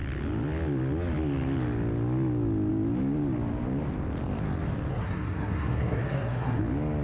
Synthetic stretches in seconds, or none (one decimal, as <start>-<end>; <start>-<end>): 4.9-6.6